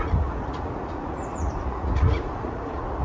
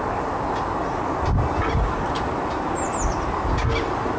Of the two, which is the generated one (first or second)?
first